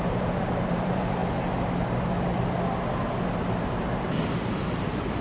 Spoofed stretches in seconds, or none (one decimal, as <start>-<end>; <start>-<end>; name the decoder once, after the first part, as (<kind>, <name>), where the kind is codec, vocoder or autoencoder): 0.0-1.2 (vocoder, BigVGAN v2); 3.6-5.2